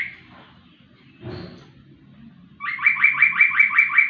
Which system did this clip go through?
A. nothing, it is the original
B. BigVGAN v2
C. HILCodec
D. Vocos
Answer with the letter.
A